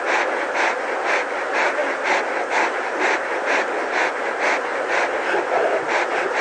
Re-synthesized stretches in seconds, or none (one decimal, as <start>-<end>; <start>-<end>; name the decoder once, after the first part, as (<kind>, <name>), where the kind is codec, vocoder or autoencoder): none